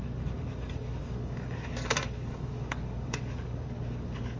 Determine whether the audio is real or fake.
fake